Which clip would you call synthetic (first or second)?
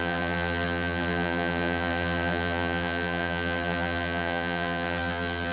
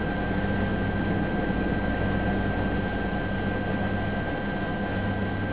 first